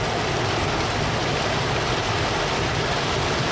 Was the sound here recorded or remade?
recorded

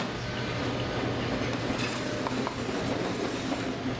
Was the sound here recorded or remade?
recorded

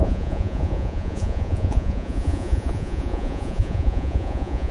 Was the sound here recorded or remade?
remade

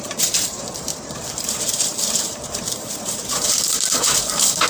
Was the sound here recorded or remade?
remade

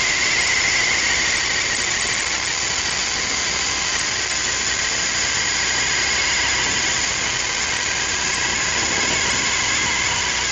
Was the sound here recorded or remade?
recorded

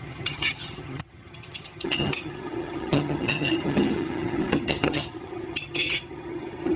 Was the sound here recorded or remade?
remade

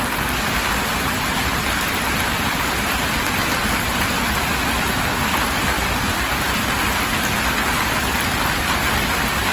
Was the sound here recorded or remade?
recorded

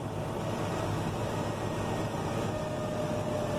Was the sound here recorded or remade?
recorded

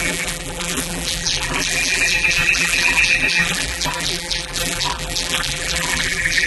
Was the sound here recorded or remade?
remade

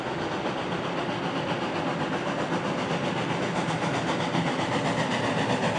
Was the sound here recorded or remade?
recorded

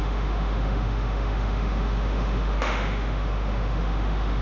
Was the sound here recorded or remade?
remade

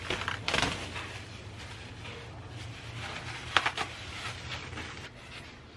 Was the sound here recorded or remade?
recorded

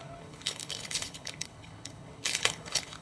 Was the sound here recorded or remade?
remade